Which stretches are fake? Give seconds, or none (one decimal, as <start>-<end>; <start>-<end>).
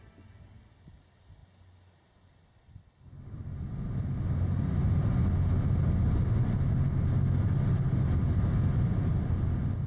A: none